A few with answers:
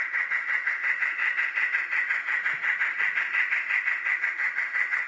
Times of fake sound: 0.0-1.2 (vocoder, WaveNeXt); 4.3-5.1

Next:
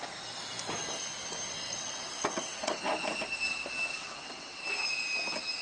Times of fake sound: 1.5-2.8 (vocoder, WaveNeXt); 3.9-4.6

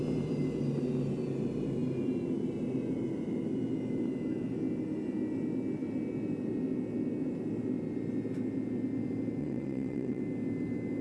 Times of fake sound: 9.4-10.2 (vocoder, WaveNeXt)

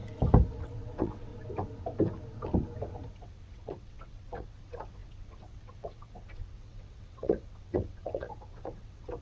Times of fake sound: 0.6-1.3 (vocoder, WaveNeXt); 3.1-9.2